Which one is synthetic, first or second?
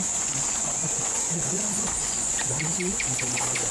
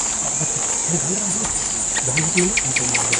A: first